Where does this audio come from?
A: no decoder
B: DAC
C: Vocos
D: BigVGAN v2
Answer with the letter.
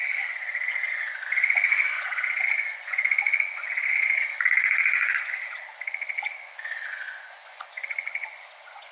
C